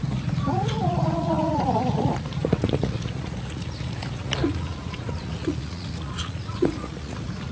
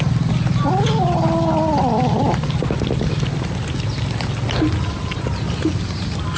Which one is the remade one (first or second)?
first